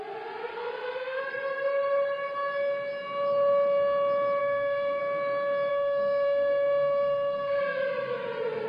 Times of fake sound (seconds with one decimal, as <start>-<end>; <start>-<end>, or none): 0.5-1.2; 4.4-5.0; 5.7-7.6